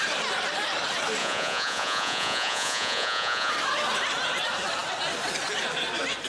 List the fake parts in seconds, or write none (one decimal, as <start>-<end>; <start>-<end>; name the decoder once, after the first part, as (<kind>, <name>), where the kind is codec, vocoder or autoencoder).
1.2-3.5 (vocoder, Vocos)